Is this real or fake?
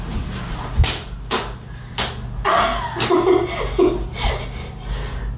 real